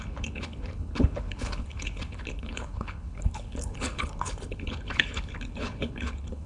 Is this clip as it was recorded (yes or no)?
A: no